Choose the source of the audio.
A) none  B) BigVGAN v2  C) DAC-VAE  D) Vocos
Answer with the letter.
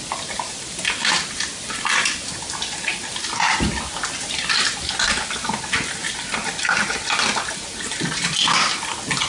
A